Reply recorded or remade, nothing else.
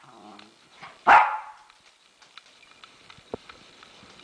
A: recorded